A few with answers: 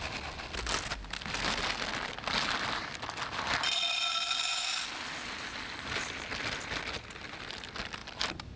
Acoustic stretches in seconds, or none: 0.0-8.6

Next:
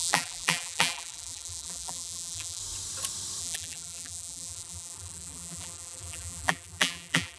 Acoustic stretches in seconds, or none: 2.6-3.4

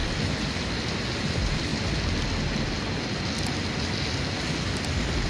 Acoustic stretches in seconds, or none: 0.0-5.3

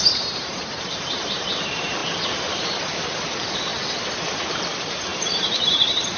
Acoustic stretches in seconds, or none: 3.7-4.5

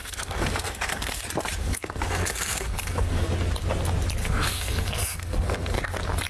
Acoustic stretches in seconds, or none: 1.2-1.6; 3.3-4.2; 5.8-6.3

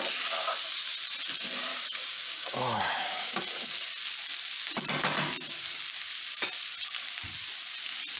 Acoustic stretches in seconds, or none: 0.0-1.7; 3.4-8.2